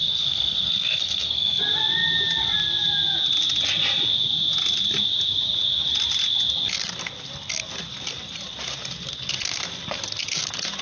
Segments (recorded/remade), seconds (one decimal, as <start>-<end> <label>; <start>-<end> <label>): 0.0-1.6 remade; 1.6-10.8 recorded